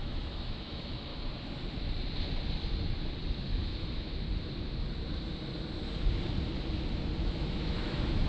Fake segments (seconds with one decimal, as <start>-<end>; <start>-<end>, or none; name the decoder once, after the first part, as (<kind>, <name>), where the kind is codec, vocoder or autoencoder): 0.0-1.1 (autoencoder, DAC-VAE); 3.5-4.1; 7.2-8.3